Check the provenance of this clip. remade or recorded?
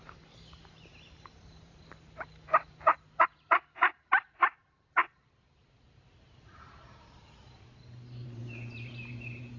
remade